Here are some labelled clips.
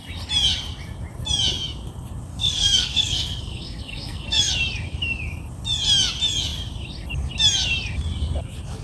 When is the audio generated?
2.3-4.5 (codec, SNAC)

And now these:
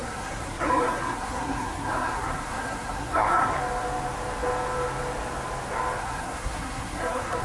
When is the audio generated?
0.0-3.6 (codec, SNAC); 6.0-7.4

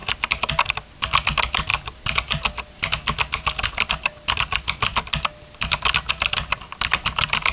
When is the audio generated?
none

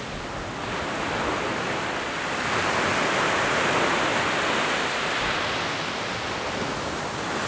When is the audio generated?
none